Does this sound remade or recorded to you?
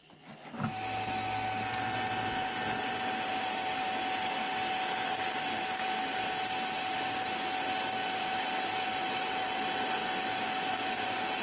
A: recorded